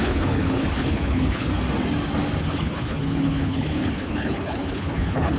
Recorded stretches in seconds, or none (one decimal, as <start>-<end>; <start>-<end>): 1.5-2.4